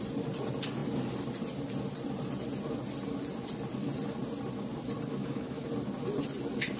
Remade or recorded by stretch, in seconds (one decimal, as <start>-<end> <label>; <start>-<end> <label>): 0.0-5.1 recorded; 5.1-5.7 remade; 5.7-6.8 recorded